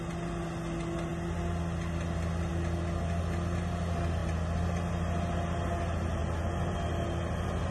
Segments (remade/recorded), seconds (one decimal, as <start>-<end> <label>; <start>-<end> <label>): 0.0-7.7 recorded